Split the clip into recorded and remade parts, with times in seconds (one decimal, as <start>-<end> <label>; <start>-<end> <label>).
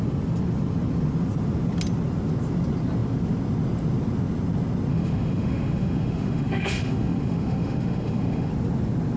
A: 0.0-4.9 recorded; 4.9-8.5 remade; 8.5-9.2 recorded